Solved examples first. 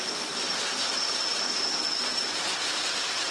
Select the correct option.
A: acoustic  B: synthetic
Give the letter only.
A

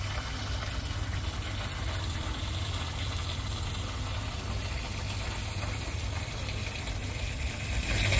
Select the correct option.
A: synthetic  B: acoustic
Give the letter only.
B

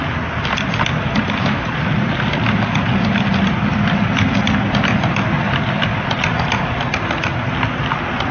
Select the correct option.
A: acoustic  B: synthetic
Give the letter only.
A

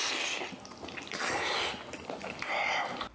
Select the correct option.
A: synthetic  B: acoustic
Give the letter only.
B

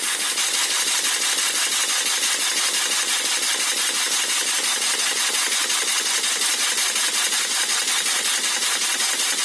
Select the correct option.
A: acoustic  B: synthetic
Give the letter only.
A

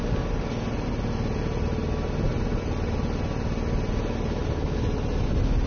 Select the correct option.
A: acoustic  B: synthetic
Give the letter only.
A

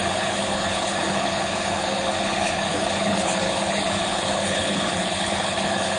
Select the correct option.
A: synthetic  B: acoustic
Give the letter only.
A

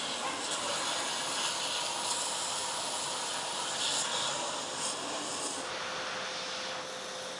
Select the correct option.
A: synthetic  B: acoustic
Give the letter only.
B